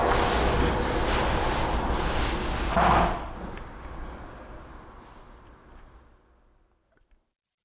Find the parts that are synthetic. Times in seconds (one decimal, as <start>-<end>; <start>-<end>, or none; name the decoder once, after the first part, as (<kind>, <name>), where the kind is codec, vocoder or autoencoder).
none

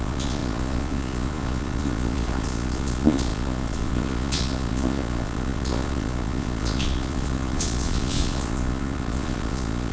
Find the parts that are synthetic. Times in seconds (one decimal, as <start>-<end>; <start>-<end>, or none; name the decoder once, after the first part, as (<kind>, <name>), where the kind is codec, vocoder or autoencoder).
0.0-9.9 (vocoder, Vocos)

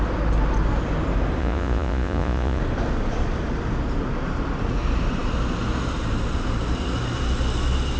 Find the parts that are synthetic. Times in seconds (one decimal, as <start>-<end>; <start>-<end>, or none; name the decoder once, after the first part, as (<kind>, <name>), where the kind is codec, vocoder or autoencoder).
1.4-2.6 (vocoder, Vocos)

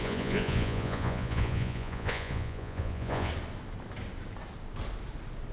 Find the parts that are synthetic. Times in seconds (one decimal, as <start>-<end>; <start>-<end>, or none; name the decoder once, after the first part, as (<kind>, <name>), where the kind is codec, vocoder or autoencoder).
0.0-3.3 (vocoder, Vocos)